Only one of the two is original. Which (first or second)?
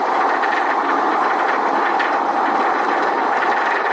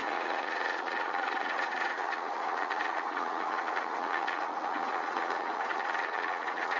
first